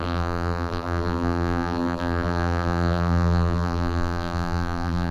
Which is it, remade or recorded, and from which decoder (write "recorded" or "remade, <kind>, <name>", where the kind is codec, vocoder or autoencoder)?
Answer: remade, vocoder, BigVGAN v2